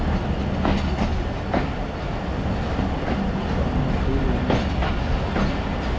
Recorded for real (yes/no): yes